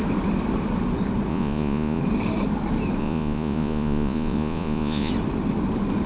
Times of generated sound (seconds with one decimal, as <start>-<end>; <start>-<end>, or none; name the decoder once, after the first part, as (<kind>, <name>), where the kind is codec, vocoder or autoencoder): 1.3-2.0 (vocoder, Vocos); 3.0-5.1